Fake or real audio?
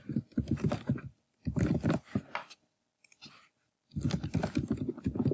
real